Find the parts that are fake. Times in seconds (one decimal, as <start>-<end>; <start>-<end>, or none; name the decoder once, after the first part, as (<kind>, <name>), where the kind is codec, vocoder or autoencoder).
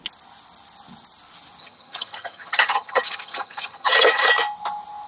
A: 1.6-4.3 (vocoder, HiFi-GAN)